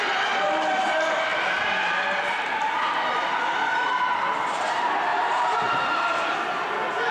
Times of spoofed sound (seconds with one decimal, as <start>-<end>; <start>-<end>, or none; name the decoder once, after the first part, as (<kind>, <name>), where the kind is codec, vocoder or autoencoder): 1.3-2.9 (vocoder, BigVGAN v2); 5.1-6.2